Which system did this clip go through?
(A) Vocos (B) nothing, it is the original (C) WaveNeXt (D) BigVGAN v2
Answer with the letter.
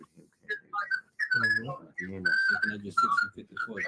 B